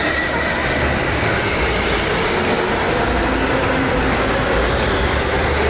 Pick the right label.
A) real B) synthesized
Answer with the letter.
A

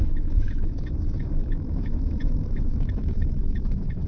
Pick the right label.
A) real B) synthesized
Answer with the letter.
B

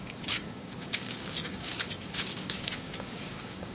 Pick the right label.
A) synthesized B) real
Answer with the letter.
A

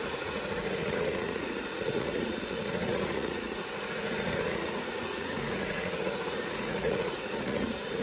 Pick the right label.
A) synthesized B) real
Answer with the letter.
A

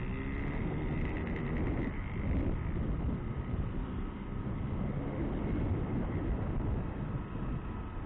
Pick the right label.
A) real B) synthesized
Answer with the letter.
A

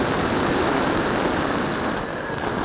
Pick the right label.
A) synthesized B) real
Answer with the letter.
A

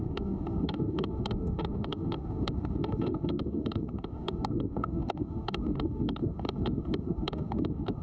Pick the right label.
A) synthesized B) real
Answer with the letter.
A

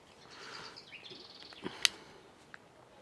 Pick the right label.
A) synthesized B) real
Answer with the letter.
B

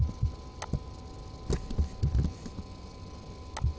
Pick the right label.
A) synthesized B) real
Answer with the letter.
B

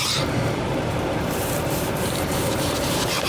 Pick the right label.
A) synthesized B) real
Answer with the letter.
A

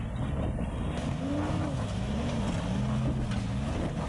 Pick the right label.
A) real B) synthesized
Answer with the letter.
A